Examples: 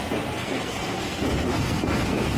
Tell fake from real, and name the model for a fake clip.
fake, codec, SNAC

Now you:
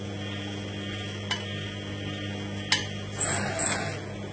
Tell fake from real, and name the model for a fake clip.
real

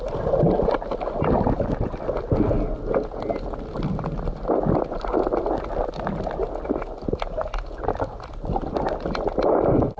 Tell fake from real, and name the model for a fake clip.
real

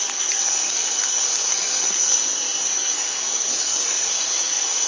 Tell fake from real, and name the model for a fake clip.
fake, codec, SNAC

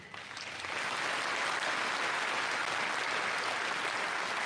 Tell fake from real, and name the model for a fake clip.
real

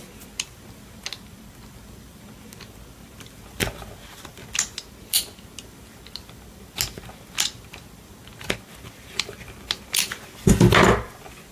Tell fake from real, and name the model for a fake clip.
real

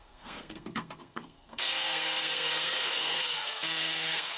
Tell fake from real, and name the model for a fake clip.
fake, codec, SNAC